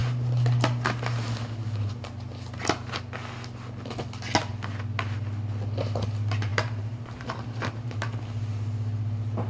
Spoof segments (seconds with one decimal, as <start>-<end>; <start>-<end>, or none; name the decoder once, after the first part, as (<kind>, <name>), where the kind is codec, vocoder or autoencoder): 6.5-8.0 (vocoder, BigVGAN v2)